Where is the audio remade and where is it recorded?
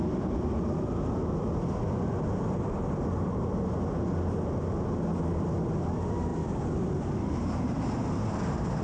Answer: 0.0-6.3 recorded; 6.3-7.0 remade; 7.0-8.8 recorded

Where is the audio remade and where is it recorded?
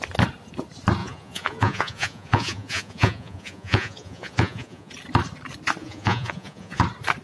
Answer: 0.0-1.0 recorded; 1.0-4.9 remade; 4.9-5.8 recorded; 5.8-6.8 remade; 6.8-7.2 recorded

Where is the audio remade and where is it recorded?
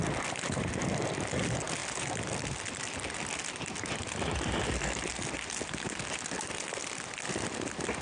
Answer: 0.0-8.0 recorded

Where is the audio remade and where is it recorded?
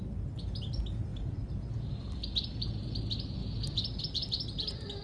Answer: 0.0-5.0 recorded